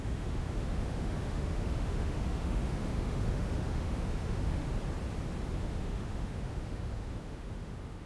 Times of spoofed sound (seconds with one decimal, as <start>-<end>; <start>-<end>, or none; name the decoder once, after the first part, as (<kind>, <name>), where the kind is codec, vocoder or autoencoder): 0.0-4.7 (autoencoder, DAC-VAE); 5.6-8.1